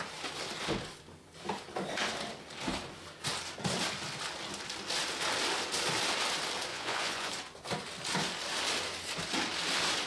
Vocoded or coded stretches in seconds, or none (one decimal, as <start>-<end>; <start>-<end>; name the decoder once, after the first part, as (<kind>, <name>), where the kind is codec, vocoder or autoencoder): 6.7-7.3 (vocoder, Vocos)